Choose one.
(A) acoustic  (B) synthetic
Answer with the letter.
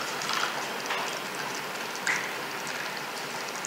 A